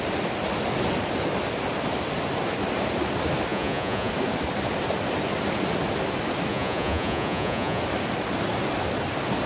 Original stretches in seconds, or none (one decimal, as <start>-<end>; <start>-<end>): 0.0-3.5; 4.1-6.5; 7.8-9.5